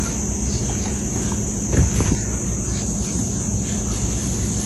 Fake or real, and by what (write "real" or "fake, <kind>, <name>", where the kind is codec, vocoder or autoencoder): real